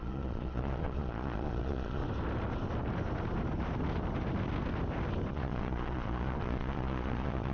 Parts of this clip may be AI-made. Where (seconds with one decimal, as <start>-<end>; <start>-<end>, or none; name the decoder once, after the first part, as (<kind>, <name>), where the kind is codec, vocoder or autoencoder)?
0.0-2.0 (vocoder, Vocos); 5.3-7.5